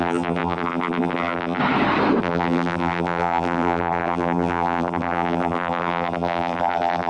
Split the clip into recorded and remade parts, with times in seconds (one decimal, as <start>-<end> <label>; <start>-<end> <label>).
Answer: 0.0-1.6 remade; 1.6-2.2 recorded; 2.2-7.1 remade